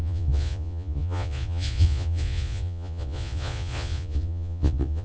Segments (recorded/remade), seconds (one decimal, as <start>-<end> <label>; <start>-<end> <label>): 0.0-5.0 remade